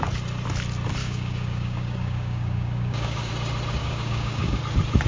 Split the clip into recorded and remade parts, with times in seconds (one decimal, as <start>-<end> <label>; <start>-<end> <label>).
0.0-1.0 recorded; 1.0-3.3 remade; 3.3-3.8 recorded; 3.8-4.6 remade; 4.6-5.1 recorded